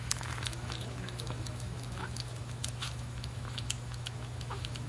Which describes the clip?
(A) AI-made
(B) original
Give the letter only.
A